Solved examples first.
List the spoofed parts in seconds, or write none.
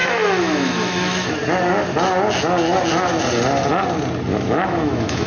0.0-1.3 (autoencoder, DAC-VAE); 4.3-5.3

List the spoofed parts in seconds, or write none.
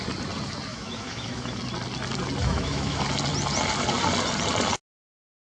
0.7-1.6 (autoencoder, DAC-VAE); 2.4-3.0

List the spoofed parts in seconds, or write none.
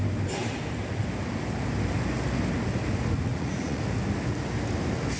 3.3-3.8 (vocoder, Vocos)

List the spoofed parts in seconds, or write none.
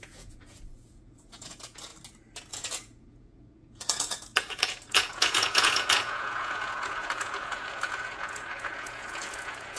0.0-1.9 (vocoder, Vocos); 2.5-9.8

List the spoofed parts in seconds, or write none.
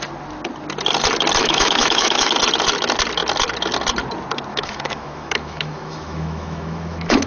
1.4-2.3 (autoencoder, DAC-VAE); 4.5-7.3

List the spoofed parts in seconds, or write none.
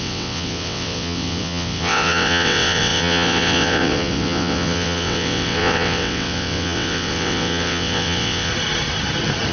0.0-8.5 (vocoder, WaveNeXt)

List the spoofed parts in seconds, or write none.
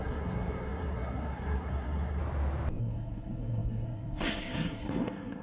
0.0-2.2 (codec, SNAC); 2.8-5.4